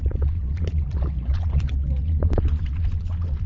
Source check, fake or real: fake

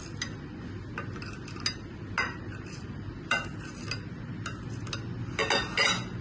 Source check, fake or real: real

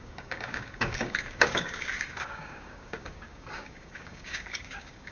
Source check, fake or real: fake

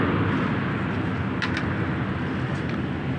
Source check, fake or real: real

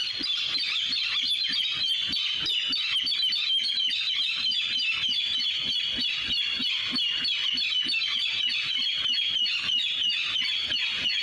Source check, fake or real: real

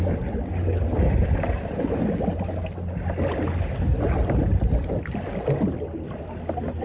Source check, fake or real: real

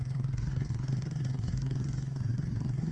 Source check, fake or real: fake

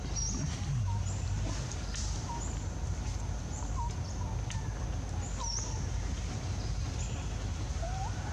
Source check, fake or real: real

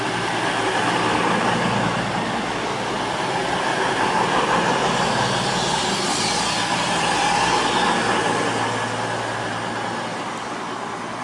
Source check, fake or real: real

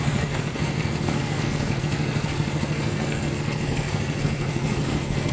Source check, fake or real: fake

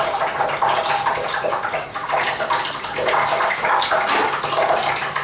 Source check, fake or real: real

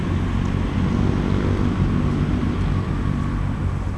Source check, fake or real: real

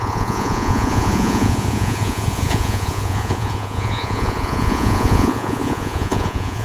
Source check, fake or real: fake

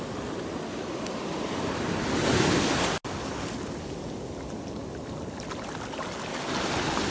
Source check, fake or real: real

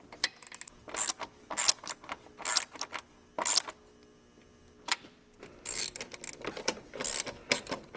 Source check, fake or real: real